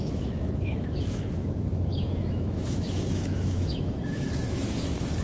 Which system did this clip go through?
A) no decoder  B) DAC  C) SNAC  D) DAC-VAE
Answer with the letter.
D